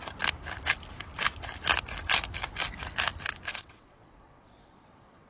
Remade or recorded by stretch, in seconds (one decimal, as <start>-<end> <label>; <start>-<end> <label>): 0.0-3.5 recorded; 3.5-5.3 remade